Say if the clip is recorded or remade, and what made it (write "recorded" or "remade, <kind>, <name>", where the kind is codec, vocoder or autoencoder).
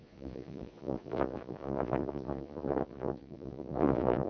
remade, vocoder, Vocos